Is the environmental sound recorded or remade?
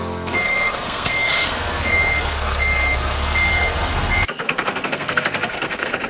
remade